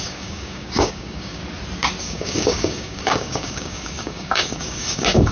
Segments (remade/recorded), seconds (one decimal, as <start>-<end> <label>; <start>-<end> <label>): 0.0-1.4 remade; 1.4-2.0 recorded; 2.0-5.3 remade